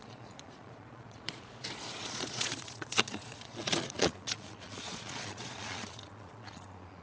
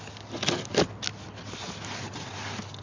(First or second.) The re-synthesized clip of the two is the first